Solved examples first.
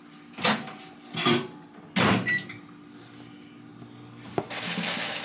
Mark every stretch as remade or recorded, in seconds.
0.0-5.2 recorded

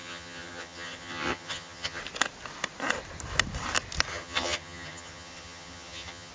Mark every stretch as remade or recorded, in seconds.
0.0-2.0 remade; 2.0-4.1 recorded; 4.1-6.3 remade

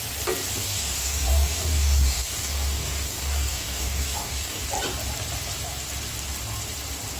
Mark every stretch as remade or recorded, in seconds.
0.0-0.6 recorded; 0.6-4.6 remade; 4.6-7.2 recorded

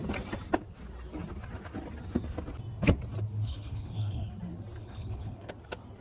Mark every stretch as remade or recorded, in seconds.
0.0-3.4 recorded; 3.4-4.3 remade; 4.3-4.8 recorded; 4.8-5.5 remade; 5.5-6.0 recorded

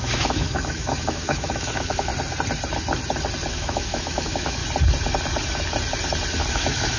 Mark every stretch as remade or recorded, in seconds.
0.0-2.1 remade; 2.1-3.5 recorded; 3.5-4.6 remade; 4.6-6.5 recorded; 6.5-7.0 remade

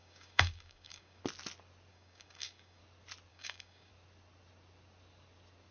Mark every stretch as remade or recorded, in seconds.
0.0-1.2 remade; 1.2-1.9 recorded; 1.9-2.8 remade; 2.8-3.3 recorded; 3.3-3.9 remade; 3.9-5.7 recorded